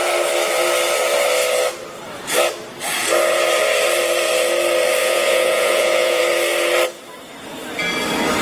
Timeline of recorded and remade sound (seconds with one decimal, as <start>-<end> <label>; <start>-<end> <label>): 0.0-5.0 recorded; 5.0-6.2 remade; 6.2-8.4 recorded